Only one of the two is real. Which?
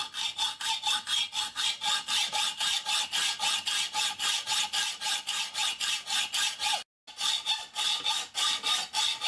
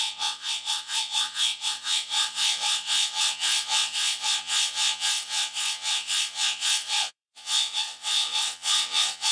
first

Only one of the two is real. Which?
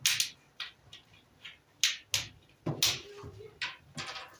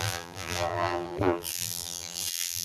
first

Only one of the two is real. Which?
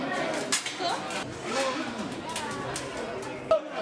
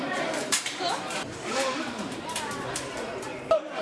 first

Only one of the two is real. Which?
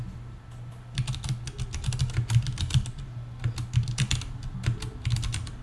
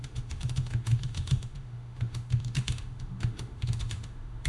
first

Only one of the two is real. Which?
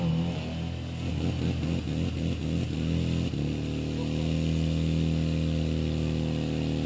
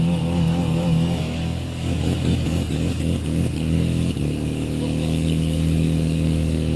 first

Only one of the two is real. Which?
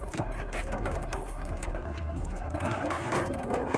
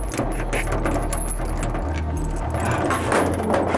second